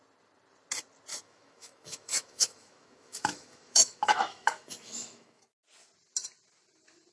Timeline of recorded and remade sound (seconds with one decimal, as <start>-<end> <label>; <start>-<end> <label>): 0.0-1.1 recorded; 1.1-5.4 remade; 5.4-7.1 recorded